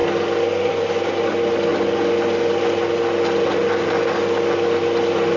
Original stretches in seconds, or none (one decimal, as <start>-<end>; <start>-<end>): 0.0-5.4